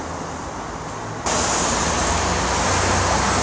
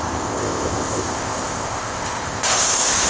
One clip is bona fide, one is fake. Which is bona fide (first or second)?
first